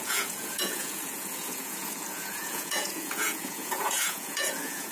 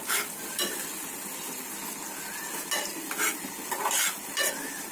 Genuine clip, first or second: second